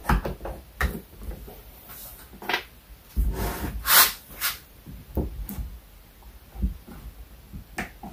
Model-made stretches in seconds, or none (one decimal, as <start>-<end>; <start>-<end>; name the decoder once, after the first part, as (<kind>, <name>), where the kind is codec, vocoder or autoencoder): none